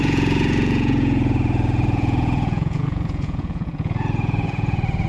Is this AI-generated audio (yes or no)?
yes